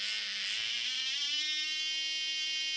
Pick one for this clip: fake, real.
real